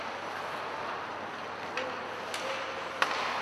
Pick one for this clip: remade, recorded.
recorded